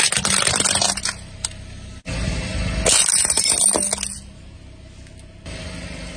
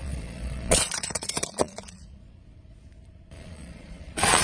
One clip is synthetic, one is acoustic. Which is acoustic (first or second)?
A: first